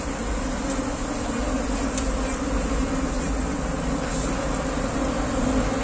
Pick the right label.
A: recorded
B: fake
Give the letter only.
A